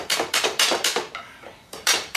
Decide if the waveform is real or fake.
fake